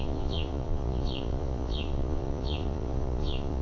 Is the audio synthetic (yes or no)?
yes